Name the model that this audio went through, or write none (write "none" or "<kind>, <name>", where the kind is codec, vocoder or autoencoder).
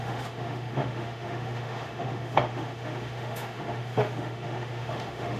autoencoder, DAC-VAE